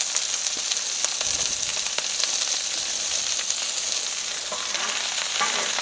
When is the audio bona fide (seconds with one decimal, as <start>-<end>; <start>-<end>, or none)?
0.0-5.8